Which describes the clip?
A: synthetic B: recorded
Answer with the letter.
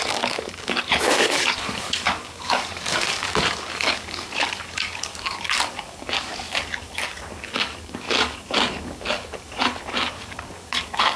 A